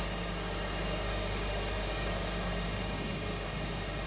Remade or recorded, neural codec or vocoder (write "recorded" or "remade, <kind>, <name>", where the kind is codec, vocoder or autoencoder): remade, codec, DAC